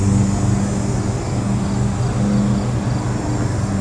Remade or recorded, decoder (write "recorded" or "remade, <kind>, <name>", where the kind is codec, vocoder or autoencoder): recorded